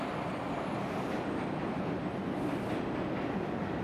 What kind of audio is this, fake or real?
fake